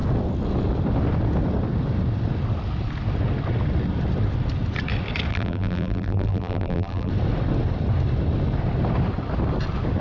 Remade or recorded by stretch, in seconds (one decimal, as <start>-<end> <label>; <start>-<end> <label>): 0.0-5.3 recorded; 5.3-7.1 remade; 7.1-10.0 recorded